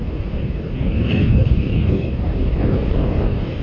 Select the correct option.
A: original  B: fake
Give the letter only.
B